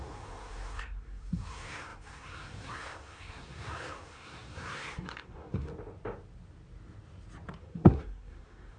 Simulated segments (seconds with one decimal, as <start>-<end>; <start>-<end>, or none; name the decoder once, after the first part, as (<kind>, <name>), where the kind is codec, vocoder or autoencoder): 0.0-5.7 (codec, SNAC); 7.6-8.8